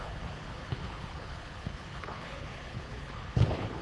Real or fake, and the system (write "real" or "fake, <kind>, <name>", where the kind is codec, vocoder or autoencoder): fake, codec, HILCodec